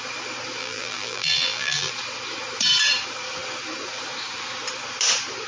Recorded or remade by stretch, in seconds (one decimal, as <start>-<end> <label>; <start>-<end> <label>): 0.0-0.6 recorded; 0.6-1.9 remade; 1.9-5.5 recorded